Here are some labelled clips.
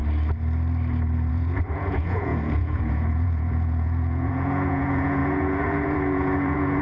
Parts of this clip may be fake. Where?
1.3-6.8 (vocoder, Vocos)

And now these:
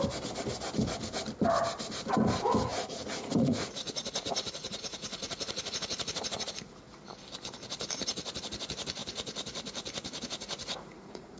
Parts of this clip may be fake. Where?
2.7-6.8 (vocoder, Vocos); 10.6-11.4

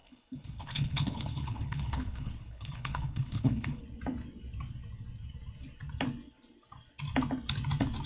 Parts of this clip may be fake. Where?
0.0-3.8 (codec, HILCodec)

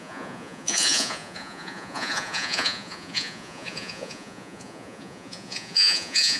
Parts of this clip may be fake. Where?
0.0-6.4 (vocoder, Vocos)

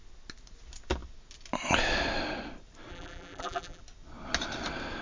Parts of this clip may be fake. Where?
2.9-3.8 (vocoder, BigVGAN v2)